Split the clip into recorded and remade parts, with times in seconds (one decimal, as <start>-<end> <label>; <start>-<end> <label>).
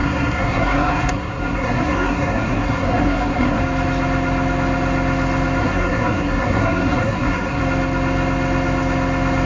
0.0-3.6 remade; 3.6-5.6 recorded; 5.6-7.6 remade; 7.6-9.5 recorded